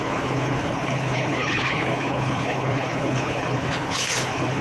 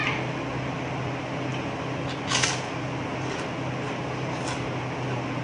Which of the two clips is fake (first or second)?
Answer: first